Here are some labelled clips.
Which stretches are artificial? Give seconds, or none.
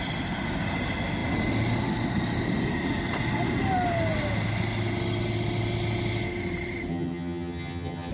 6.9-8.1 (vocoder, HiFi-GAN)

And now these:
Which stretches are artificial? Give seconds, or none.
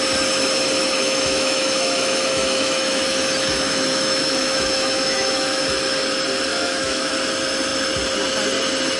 0.8-5.6 (autoencoder, DAC-VAE); 6.5-7.1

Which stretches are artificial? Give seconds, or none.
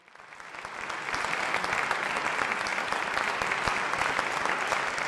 none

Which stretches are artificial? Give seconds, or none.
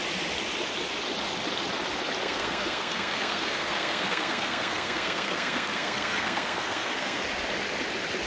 2.2-7.2 (codec, SNAC)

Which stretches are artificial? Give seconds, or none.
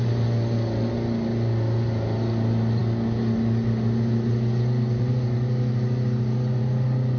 none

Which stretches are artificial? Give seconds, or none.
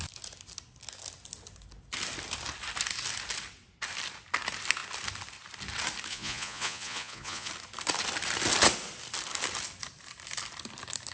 6.1-7.5 (vocoder, Vocos)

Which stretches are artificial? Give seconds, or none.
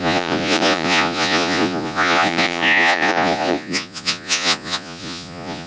0.0-5.7 (vocoder, Vocos)